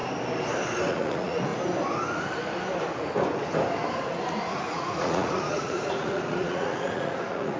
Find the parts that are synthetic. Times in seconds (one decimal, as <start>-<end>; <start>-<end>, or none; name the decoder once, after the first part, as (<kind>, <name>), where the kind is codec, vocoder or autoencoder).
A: 0.9-1.5 (vocoder, Vocos); 4.5-7.6